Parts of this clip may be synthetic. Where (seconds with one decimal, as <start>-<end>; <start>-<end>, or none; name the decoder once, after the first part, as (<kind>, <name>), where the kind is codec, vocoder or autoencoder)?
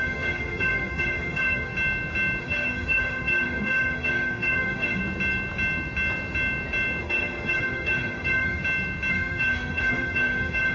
0.0-1.7 (autoencoder, DAC-VAE); 2.4-5.0; 7.0-8.6; 9.1-10.7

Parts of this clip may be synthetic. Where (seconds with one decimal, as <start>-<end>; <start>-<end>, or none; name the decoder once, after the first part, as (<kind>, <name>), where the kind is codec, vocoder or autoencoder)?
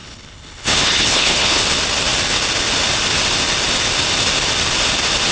0.0-1.6 (codec, HILCodec)